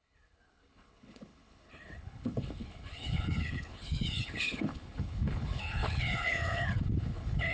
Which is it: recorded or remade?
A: remade